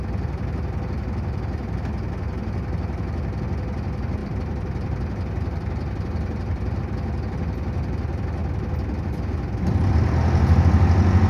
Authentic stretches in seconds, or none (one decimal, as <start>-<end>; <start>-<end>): 0.0-4.2; 6.8-11.3